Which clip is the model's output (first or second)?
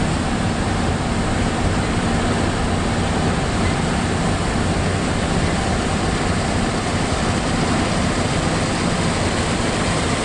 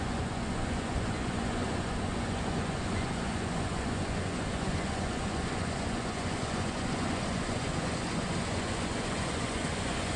second